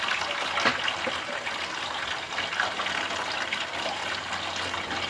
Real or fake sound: real